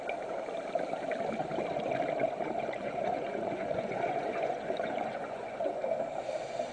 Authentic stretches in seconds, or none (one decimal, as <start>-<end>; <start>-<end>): 0.0-2.8; 5.8-6.7